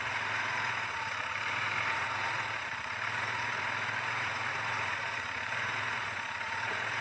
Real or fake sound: fake